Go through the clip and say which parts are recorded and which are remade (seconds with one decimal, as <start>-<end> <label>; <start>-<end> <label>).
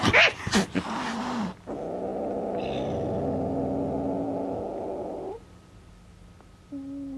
0.0-7.2 recorded